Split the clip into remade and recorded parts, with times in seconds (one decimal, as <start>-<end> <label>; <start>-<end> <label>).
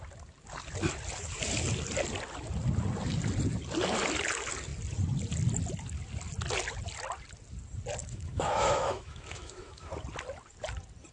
0.0-8.0 recorded; 8.0-9.9 remade; 9.9-11.1 recorded